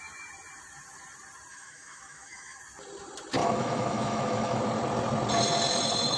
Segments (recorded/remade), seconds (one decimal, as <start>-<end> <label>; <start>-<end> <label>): 0.0-1.5 recorded; 1.5-2.6 remade; 2.6-3.4 recorded; 3.4-4.6 remade; 4.6-6.2 recorded